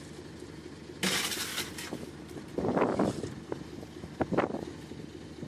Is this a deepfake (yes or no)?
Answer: no